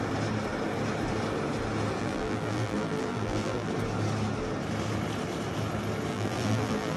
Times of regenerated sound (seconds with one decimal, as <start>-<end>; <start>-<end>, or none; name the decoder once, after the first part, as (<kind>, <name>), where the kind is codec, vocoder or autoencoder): 2.0-3.7 (vocoder, BigVGAN v2); 6.1-7.0